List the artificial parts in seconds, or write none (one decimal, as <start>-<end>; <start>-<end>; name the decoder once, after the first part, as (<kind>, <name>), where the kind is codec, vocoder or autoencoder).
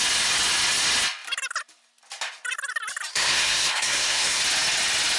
3.1-4.4 (codec, SNAC)